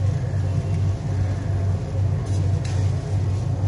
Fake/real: real